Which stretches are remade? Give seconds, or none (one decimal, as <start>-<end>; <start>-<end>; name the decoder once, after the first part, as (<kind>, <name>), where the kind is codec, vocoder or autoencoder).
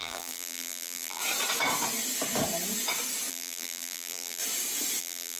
0.0-1.2 (vocoder, BigVGAN v2); 3.3-4.4; 5.0-5.4